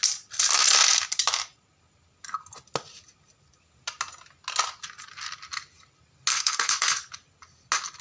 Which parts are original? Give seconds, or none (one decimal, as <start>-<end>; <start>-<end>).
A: 0.0-6.3; 7.1-8.0